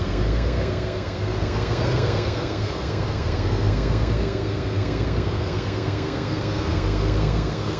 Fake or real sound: fake